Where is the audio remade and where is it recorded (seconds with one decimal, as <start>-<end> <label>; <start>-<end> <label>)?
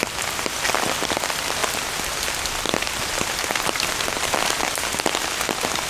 0.0-1.6 recorded; 1.6-4.0 remade; 4.0-5.9 recorded